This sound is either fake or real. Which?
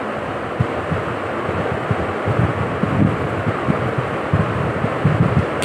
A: real